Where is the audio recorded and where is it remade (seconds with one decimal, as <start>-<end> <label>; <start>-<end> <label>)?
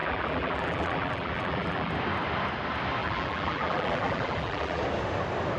0.0-1.9 remade; 1.9-3.0 recorded; 3.0-4.8 remade; 4.8-5.6 recorded